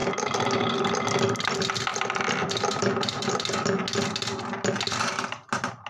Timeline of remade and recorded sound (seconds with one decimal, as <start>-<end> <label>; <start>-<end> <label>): 0.0-1.9 recorded; 1.9-3.3 remade; 3.3-5.9 recorded